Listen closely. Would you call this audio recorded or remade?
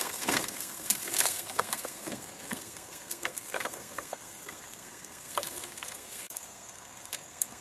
remade